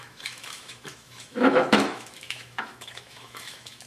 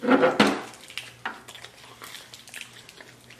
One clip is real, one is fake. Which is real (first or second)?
second